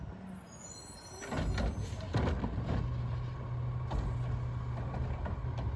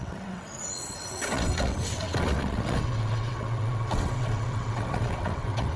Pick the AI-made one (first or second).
second